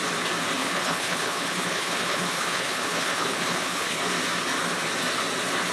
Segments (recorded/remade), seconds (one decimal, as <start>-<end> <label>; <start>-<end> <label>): 0.0-0.6 recorded; 0.6-4.0 remade; 4.0-5.7 recorded